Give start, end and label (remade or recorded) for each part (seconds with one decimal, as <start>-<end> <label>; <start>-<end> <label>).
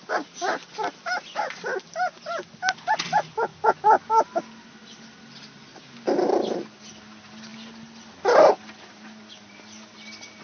0.0-10.4 recorded